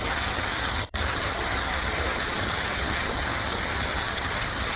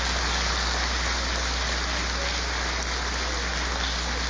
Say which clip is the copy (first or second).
first